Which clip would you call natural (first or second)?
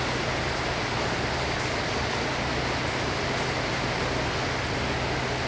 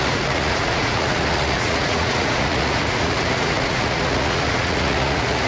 first